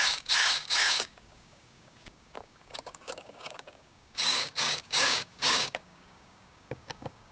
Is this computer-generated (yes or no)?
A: yes